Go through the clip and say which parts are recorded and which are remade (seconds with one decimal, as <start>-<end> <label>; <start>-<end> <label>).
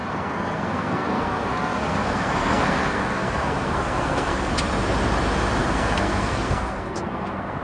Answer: 0.0-4.5 remade; 4.5-5.6 recorded; 5.6-7.6 remade